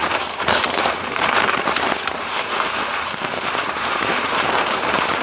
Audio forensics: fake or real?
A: fake